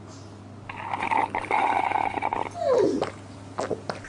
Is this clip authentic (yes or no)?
yes